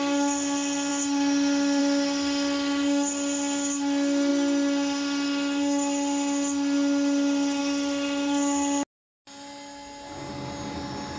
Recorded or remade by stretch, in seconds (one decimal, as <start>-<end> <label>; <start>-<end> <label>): 0.0-11.2 recorded